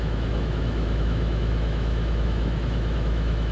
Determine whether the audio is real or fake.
fake